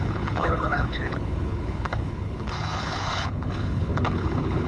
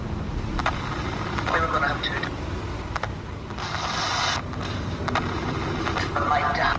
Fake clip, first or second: first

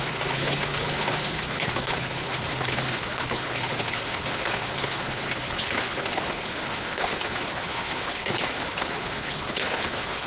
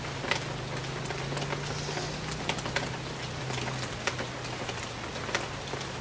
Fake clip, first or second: first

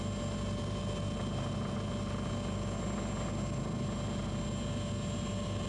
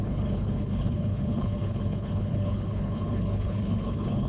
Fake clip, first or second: second